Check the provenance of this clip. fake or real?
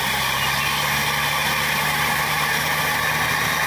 real